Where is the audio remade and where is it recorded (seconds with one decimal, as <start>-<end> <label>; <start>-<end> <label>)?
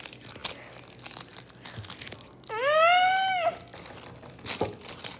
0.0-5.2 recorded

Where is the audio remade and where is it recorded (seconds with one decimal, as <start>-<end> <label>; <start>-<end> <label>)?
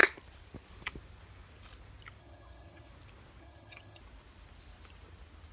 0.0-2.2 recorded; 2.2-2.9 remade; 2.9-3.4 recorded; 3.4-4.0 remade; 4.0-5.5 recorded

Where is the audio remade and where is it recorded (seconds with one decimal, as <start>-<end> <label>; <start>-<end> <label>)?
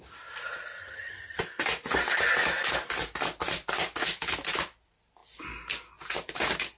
0.0-0.8 recorded; 0.8-1.4 remade; 1.4-6.8 recorded